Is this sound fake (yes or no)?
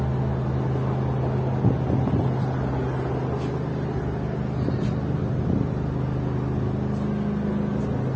no